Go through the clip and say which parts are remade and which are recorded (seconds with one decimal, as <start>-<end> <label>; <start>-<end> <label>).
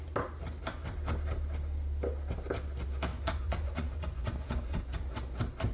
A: 0.0-3.1 recorded; 3.1-4.8 remade; 4.8-5.7 recorded